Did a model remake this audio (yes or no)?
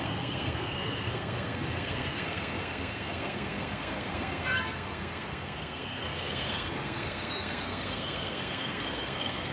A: yes